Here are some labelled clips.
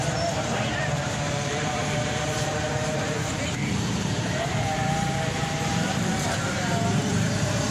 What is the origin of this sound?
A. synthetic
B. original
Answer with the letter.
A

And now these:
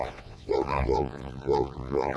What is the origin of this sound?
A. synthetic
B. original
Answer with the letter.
A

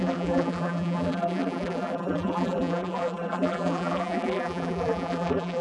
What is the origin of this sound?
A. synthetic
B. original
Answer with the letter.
A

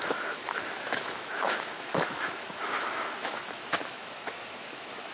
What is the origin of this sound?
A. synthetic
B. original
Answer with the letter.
A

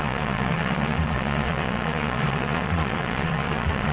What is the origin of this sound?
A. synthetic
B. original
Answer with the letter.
A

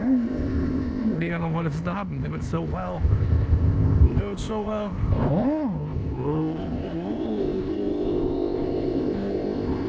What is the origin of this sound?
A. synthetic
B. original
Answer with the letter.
A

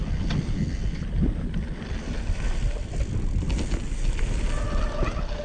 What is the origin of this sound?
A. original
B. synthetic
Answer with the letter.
A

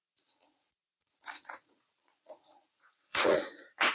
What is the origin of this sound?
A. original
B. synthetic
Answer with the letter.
B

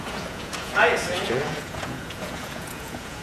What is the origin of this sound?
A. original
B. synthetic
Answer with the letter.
B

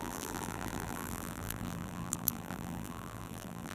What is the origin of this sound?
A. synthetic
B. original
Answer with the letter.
A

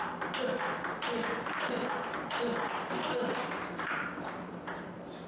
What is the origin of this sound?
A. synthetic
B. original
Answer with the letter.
B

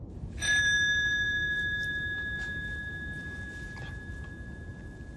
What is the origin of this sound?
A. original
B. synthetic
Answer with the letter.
A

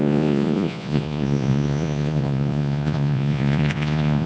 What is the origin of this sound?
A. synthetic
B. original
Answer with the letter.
A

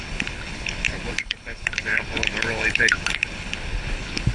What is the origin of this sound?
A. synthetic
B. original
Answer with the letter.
A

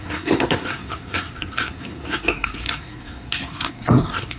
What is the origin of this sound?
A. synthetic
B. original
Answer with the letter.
A